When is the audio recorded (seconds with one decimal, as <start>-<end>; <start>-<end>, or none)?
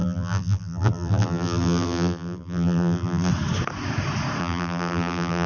3.3-4.4